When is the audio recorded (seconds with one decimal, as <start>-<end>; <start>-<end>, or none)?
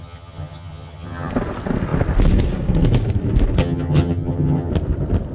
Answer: 1.3-3.6; 4.7-5.3